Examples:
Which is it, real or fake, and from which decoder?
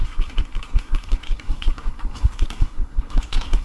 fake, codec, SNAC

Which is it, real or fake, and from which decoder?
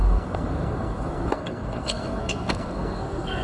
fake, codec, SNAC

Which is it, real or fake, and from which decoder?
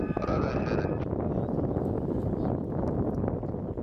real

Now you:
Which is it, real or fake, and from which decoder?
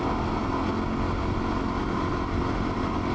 real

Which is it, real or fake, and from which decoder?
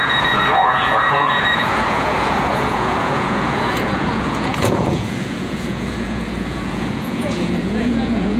fake, vocoder, Vocos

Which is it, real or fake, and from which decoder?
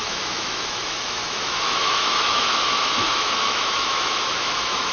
fake, autoencoder, DAC-VAE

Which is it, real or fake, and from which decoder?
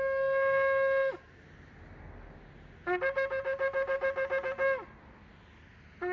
real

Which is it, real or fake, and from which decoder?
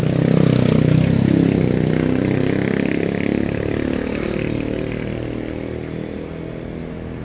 real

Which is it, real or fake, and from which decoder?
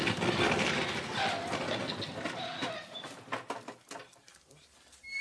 real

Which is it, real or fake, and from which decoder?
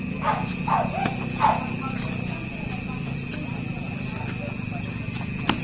real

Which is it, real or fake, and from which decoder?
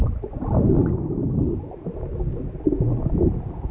real